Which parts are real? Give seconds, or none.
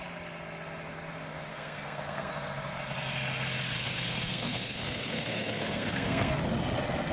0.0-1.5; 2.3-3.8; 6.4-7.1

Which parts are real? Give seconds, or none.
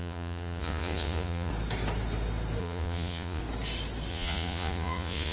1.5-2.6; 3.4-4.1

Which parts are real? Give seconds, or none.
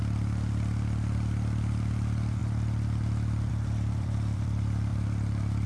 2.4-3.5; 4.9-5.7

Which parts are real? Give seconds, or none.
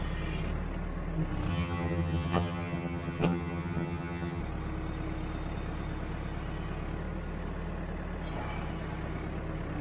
0.0-1.5; 4.4-9.8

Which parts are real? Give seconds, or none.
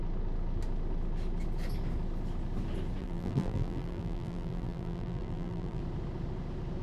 0.0-3.0; 5.8-6.8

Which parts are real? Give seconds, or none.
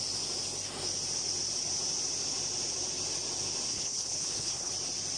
0.0-3.7; 4.7-5.2